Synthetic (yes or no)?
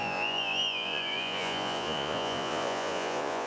yes